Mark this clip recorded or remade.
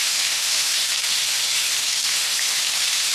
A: remade